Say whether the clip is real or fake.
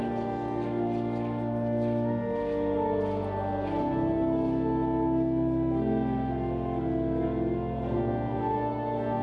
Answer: real